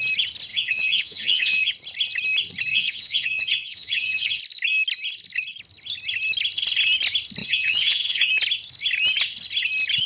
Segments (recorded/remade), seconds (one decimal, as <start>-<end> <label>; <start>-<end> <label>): 0.0-0.5 recorded; 0.5-1.7 remade; 1.7-2.7 recorded; 2.7-4.4 remade; 4.4-7.4 recorded; 7.4-8.3 remade; 8.3-10.1 recorded